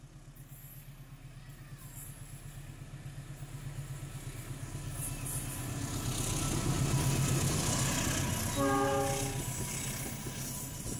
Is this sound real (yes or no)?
yes